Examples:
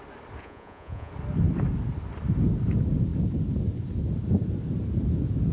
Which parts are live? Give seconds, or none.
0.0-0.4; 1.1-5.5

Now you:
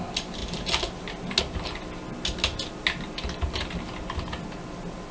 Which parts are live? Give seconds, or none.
0.0-5.1

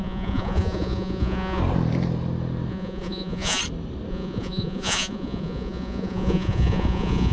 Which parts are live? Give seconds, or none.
1.6-2.7; 3.6-4.1

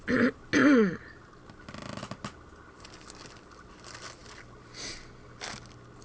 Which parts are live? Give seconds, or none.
0.0-6.0

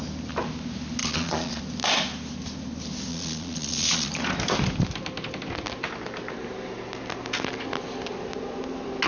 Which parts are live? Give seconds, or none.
0.0-1.0; 1.6-3.1; 4.1-9.1